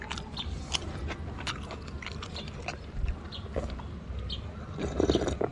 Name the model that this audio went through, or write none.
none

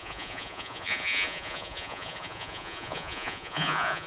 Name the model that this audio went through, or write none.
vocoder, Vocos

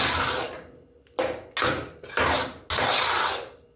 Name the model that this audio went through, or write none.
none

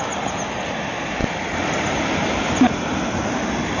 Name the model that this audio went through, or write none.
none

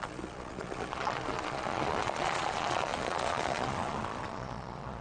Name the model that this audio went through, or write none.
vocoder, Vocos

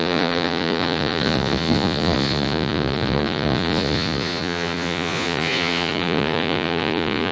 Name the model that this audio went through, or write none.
vocoder, Vocos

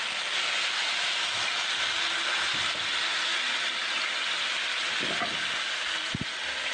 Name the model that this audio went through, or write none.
none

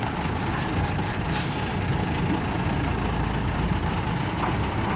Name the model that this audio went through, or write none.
none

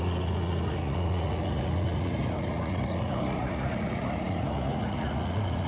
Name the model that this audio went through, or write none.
vocoder, Vocos